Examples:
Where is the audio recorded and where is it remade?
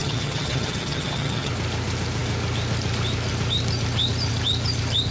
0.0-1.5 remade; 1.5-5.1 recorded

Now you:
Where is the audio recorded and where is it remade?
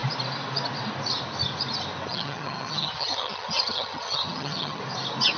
0.0-2.1 recorded; 2.1-4.8 remade; 4.8-5.4 recorded